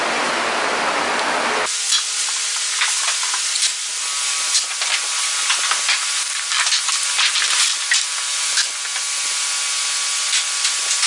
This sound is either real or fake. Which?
real